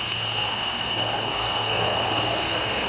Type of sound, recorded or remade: remade